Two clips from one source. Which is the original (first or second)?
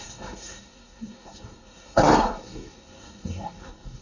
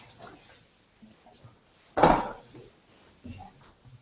second